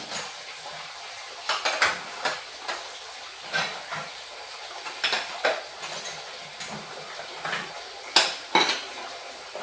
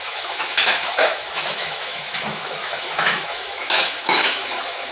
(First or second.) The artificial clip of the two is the second